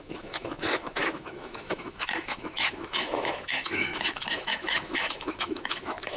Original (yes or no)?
no